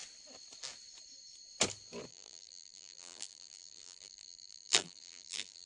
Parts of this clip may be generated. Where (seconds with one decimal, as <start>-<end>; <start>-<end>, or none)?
2.1-5.7